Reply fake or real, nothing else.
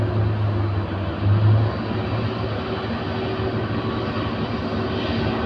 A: real